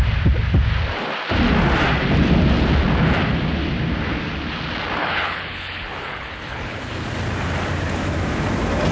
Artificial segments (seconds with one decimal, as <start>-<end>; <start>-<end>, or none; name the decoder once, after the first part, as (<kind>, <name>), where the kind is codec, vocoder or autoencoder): 5.0-6.9 (codec, HILCodec)